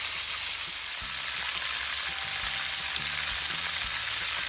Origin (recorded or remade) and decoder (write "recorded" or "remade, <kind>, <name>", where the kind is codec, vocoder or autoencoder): recorded